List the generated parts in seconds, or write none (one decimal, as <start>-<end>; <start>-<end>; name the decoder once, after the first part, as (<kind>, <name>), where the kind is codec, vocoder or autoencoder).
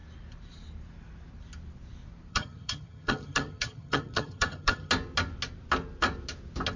2.3-4.9 (vocoder, HiFi-GAN)